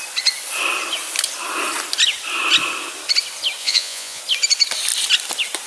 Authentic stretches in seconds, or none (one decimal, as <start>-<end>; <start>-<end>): 0.0-3.6; 4.2-5.7